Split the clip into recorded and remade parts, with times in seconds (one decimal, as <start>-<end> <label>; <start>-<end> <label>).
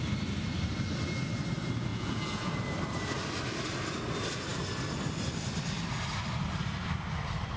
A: 0.0-1.9 recorded; 1.9-2.5 remade; 2.5-7.6 recorded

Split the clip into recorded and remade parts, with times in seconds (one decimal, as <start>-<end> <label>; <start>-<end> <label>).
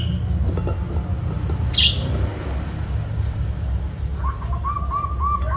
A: 0.0-5.6 recorded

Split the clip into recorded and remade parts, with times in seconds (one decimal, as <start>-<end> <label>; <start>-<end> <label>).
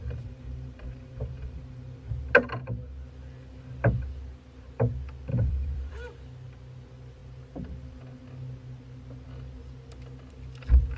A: 0.0-2.1 remade; 2.1-5.3 recorded; 5.3-5.9 remade; 5.9-11.0 recorded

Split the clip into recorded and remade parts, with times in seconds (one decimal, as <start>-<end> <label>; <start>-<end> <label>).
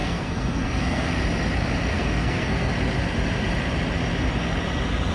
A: 0.0-1.1 remade; 1.1-1.9 recorded; 1.9-2.7 remade; 2.7-5.1 recorded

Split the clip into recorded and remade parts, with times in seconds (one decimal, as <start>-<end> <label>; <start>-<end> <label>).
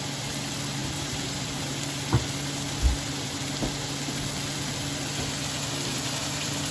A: 0.0-0.8 recorded; 0.8-1.6 remade; 1.6-5.9 recorded; 5.9-6.7 remade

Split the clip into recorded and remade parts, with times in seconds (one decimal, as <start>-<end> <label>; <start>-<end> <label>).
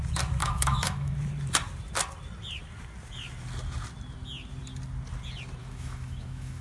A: 0.0-0.4 recorded; 0.4-1.1 remade; 1.1-5.6 recorded; 5.6-6.6 remade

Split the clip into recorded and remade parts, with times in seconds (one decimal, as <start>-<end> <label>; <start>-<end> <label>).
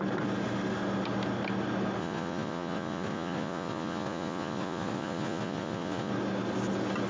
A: 0.0-2.0 recorded; 2.0-6.1 remade; 6.1-7.1 recorded